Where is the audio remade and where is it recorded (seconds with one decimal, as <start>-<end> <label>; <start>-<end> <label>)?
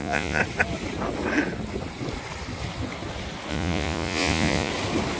0.0-0.4 remade; 0.4-3.5 recorded; 3.5-4.7 remade; 4.7-5.2 recorded